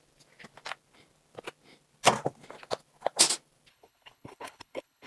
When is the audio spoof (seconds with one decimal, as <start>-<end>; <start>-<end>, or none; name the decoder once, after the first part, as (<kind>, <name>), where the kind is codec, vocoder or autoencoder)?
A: 3.7-5.1 (codec, HILCodec)